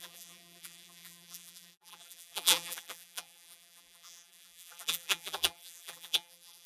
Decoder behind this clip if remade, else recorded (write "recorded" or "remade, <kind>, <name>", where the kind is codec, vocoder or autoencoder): remade, vocoder, BigVGAN v2